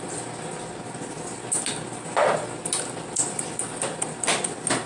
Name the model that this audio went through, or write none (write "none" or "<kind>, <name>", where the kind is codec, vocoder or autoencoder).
none